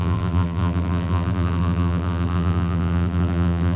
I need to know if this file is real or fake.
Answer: fake